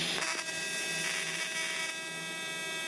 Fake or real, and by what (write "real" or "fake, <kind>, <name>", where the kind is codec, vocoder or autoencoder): real